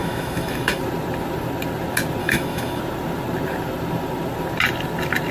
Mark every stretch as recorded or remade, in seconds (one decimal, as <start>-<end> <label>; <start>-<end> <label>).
0.0-0.8 remade; 0.8-2.2 recorded; 2.2-2.8 remade; 2.8-5.3 recorded